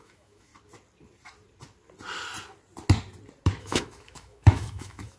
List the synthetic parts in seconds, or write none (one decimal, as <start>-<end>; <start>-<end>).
0.0-0.5; 3.6-5.2